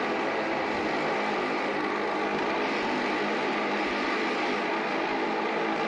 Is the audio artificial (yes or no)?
no